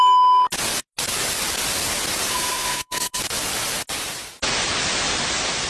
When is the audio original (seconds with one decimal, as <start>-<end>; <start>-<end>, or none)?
0.0-2.3; 3.2-5.7